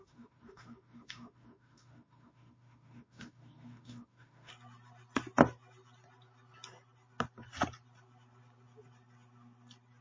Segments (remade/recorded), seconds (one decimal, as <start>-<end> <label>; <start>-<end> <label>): 0.0-4.5 remade; 4.5-10.0 recorded